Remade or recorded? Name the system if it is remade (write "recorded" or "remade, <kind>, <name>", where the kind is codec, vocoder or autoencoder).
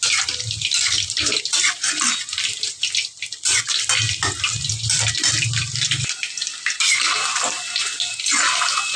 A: recorded